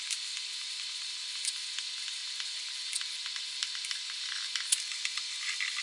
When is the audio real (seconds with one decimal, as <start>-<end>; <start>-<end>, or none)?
0.0-5.8